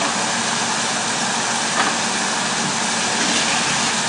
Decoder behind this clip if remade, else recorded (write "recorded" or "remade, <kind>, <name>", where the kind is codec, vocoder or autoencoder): recorded